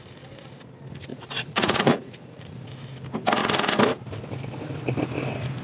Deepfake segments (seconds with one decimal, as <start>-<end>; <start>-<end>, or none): 1.1-2.6

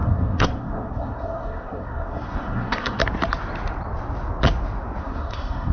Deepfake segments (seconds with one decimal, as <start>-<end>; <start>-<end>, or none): 0.0-3.0; 5.0-5.7

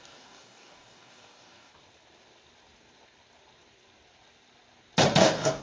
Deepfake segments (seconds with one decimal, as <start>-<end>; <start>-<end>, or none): 0.0-1.7; 5.1-5.6